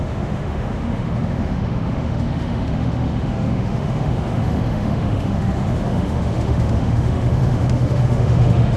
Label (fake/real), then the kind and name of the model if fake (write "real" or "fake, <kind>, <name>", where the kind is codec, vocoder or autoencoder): fake, autoencoder, DAC-VAE